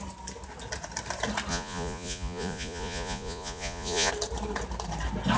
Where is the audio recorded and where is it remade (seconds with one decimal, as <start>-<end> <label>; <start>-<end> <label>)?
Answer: 0.0-1.5 recorded; 1.5-4.1 remade; 4.1-5.4 recorded